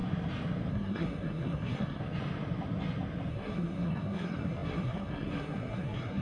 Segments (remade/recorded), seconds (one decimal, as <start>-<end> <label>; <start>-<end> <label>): 0.0-0.7 recorded; 0.7-2.0 remade; 2.0-3.3 recorded; 3.3-6.2 remade